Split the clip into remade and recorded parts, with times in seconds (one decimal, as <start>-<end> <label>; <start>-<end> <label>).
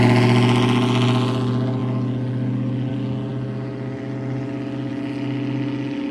0.0-6.1 recorded